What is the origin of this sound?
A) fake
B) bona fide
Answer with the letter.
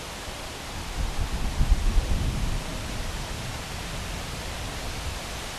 B